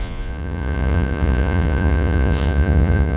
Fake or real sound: fake